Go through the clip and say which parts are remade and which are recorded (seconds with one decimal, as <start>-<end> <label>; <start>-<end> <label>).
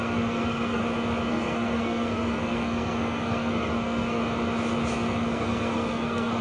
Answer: 0.0-0.8 remade; 0.8-1.3 recorded; 1.3-4.2 remade; 4.2-4.9 recorded; 4.9-6.4 remade